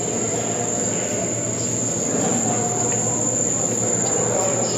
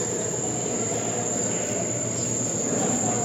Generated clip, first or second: second